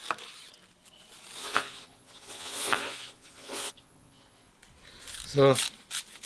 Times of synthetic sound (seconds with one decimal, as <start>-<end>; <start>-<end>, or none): 1.4-4.5